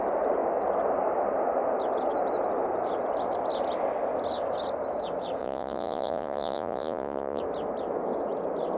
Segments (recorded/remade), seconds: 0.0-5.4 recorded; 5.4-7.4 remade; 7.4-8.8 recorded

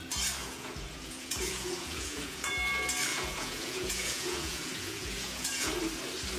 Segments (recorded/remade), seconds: 0.0-0.4 recorded; 0.4-2.5 remade; 2.5-3.1 recorded; 3.1-5.7 remade; 5.7-6.4 recorded